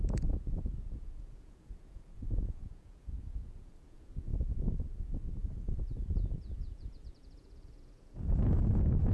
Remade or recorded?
remade